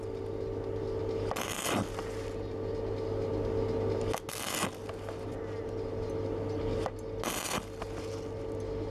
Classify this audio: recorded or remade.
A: recorded